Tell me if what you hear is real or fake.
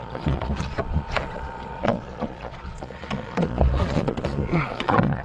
fake